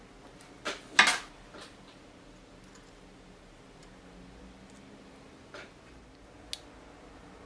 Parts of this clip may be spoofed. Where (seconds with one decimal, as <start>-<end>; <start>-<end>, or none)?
none